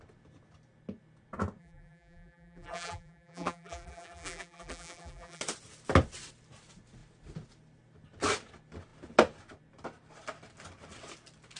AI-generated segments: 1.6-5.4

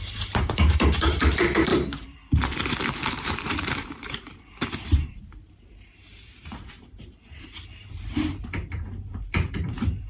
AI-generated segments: 0.0-10.1

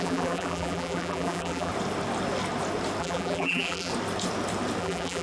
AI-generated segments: 0.0-1.7; 3.0-3.9; 4.8-5.2